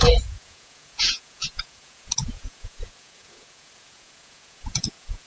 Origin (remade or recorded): remade